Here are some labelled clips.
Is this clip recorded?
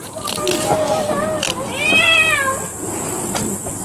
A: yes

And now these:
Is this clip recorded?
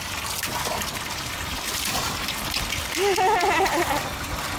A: yes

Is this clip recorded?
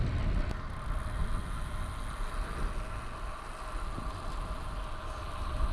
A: yes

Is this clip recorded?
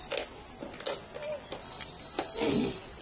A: yes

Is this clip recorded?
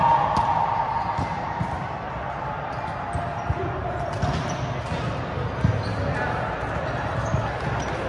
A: yes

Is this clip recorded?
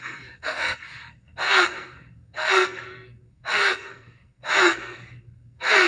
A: no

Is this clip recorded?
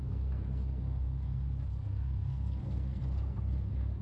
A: no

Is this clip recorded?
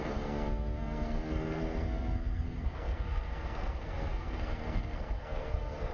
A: no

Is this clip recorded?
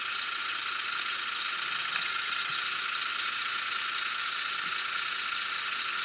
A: yes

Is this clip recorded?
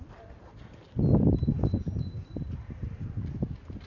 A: yes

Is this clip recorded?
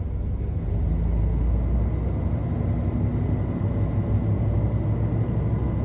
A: yes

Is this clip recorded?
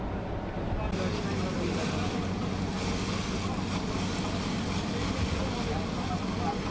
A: yes